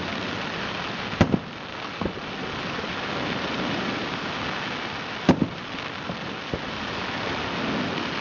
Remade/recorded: recorded